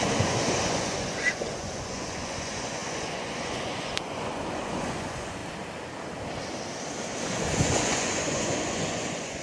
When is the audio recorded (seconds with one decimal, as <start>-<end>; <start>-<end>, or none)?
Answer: 5.4-7.2